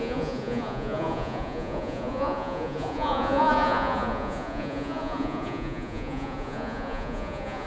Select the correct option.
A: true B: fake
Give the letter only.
B